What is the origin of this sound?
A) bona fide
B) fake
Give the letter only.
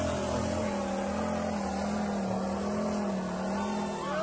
A